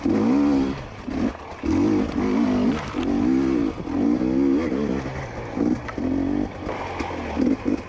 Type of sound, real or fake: real